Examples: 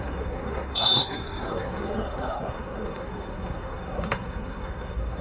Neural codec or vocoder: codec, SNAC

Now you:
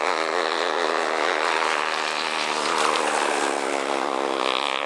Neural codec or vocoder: none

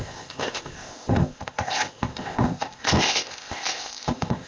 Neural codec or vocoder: codec, ZipCodec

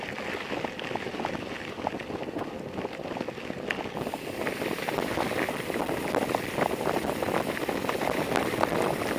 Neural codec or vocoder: none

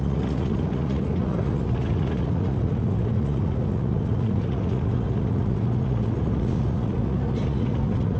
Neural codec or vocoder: vocoder, Vocos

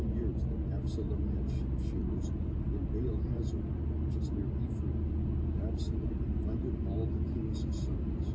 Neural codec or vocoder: none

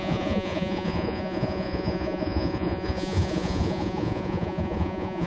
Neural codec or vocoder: vocoder, Vocos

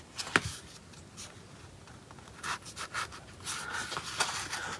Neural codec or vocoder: none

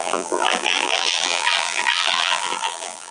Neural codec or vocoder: vocoder, BigVGAN v2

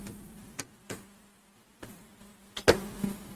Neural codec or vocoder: none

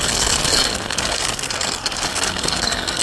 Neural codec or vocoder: codec, SNAC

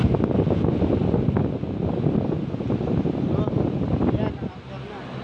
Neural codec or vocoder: none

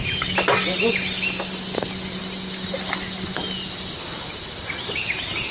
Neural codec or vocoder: none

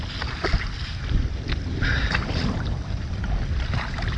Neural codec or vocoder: vocoder, BigVGAN v2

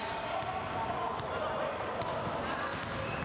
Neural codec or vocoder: none